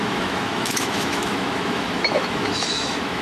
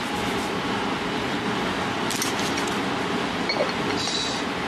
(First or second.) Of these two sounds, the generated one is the first